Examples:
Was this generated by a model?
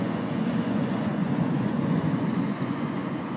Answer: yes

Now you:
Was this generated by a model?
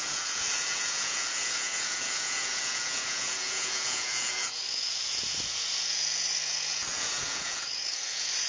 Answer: yes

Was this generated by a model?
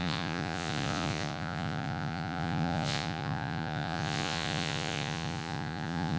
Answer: yes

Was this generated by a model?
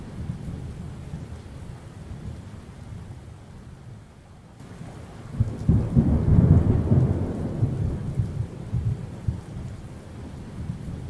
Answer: no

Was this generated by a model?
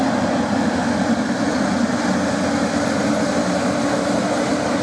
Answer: no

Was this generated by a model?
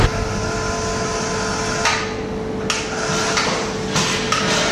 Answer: no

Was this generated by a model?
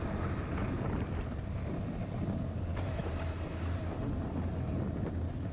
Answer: no